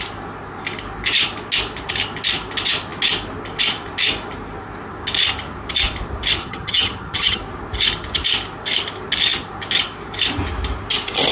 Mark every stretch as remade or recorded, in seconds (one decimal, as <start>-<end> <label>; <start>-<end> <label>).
0.0-6.4 recorded; 6.4-7.4 remade; 7.4-11.3 recorded